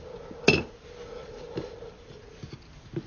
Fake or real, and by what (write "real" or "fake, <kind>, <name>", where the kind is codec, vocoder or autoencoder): real